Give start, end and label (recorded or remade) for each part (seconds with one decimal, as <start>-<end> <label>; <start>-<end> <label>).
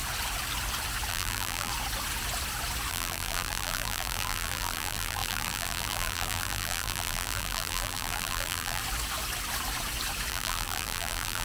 0.0-1.1 recorded; 1.1-1.7 remade; 1.7-2.9 recorded; 2.9-8.8 remade; 8.8-10.3 recorded; 10.3-11.4 remade